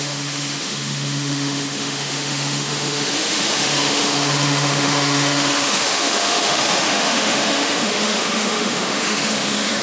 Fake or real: fake